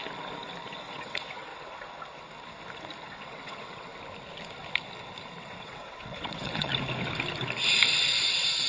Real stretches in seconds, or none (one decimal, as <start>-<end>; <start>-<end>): 0.0-0.9; 1.5-3.1; 3.9-5.4; 6.7-8.2